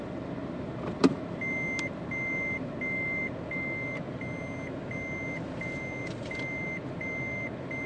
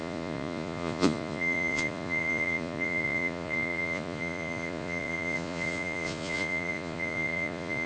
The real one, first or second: first